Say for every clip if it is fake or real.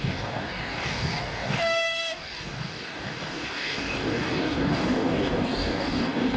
fake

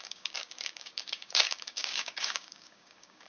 fake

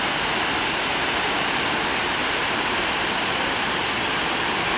real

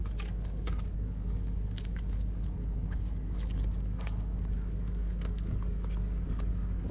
fake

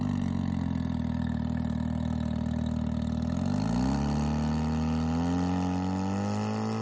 real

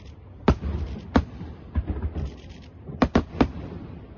real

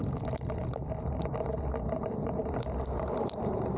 real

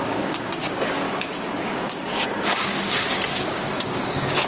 fake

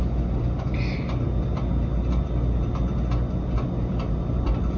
real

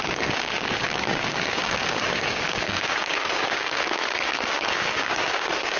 fake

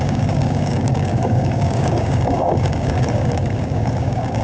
fake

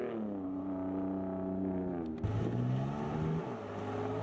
real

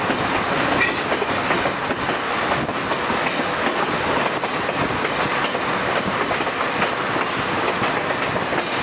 real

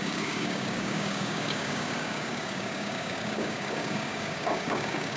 fake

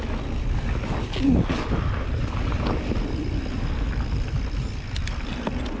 real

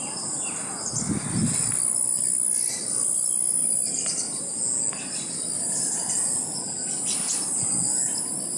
real